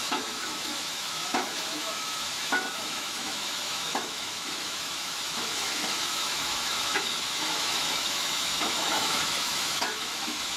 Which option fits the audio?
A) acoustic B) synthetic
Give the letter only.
B